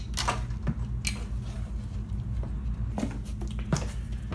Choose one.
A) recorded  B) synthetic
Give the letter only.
A